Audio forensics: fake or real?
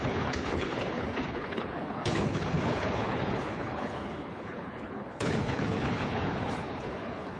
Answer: fake